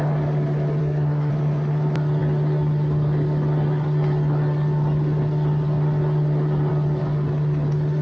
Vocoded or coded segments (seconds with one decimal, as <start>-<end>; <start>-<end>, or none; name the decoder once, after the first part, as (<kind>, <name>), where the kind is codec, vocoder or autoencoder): 0.8-1.3 (codec, SNAC)